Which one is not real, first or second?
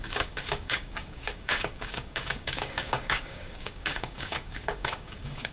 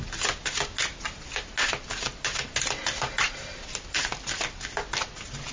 first